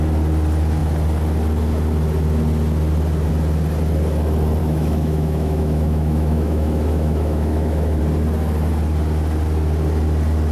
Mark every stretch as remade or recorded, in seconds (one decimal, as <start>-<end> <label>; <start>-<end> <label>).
0.0-4.6 recorded; 4.6-8.0 remade; 8.0-10.5 recorded